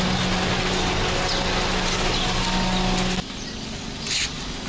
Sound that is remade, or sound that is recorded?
recorded